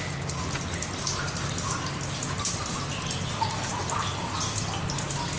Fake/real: real